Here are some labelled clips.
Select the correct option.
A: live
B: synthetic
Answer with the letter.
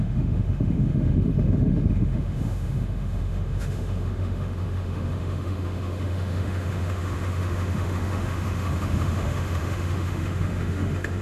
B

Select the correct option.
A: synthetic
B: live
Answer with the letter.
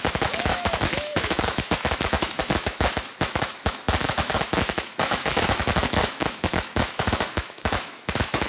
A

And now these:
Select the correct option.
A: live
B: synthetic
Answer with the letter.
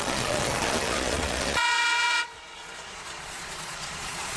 B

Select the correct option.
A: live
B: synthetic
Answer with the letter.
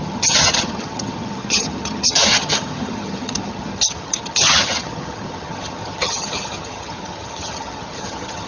B